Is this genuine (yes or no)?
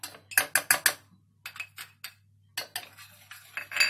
yes